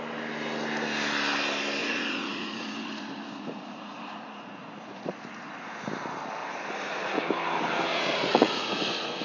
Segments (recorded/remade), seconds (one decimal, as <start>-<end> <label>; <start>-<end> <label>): 0.0-1.8 recorded; 1.8-5.8 remade; 5.8-6.4 recorded; 6.4-7.2 remade; 7.2-7.9 recorded; 7.9-9.2 remade